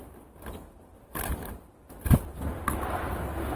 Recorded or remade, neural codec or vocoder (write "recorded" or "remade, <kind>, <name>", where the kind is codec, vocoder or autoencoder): recorded